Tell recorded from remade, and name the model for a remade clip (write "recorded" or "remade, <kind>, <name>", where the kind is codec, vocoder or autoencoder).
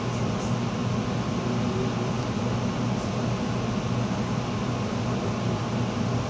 recorded